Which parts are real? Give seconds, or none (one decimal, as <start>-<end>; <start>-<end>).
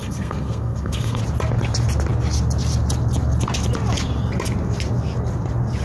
1.2-5.8